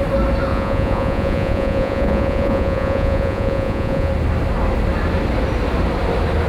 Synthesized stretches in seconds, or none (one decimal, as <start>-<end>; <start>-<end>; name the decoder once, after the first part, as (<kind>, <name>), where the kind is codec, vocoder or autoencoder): 0.5-4.1 (vocoder, Vocos)